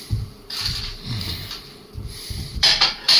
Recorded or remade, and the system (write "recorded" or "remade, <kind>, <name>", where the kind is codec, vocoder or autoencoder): remade, vocoder, BigVGAN v2